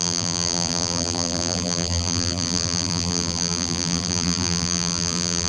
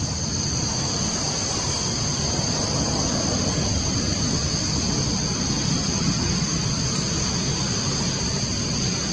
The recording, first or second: second